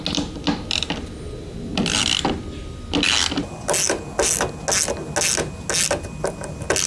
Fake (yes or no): no